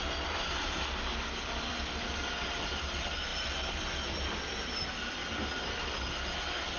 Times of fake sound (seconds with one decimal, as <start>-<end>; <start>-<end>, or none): 0.0-6.8